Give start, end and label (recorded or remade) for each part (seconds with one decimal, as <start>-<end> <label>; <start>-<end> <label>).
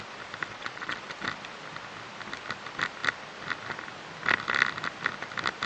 0.0-0.5 recorded; 0.5-1.1 remade; 1.1-5.7 recorded